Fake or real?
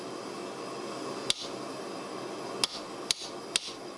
real